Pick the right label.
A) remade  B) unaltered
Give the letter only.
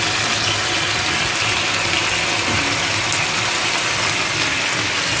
B